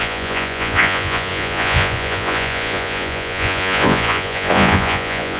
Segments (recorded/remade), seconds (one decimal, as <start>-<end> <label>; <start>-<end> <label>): 0.0-5.4 remade